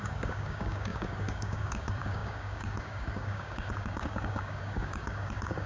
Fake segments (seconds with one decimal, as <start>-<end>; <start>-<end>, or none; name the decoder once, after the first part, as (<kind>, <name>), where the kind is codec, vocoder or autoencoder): 0.0-5.7 (codec, DAC)